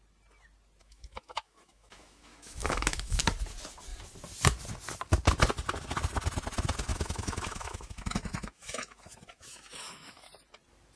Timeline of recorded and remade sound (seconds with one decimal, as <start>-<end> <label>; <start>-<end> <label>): 0.0-0.8 recorded; 0.8-3.2 remade; 3.2-6.9 recorded; 6.9-10.3 remade; 10.3-11.0 recorded